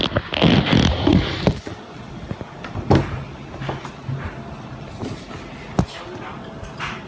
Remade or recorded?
recorded